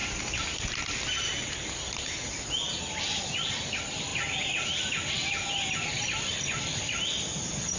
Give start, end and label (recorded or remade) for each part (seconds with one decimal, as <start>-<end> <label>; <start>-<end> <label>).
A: 0.0-3.0 recorded; 3.0-4.1 remade; 4.1-5.9 recorded; 5.9-7.8 remade